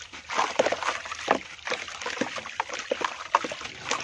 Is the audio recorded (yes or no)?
yes